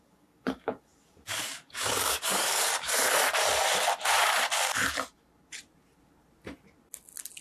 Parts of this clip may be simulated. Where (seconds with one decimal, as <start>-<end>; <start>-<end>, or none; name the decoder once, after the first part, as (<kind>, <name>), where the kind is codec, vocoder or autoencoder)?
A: 0.0-2.9 (codec, DAC)